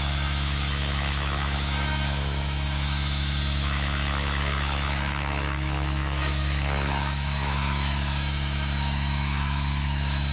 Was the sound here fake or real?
fake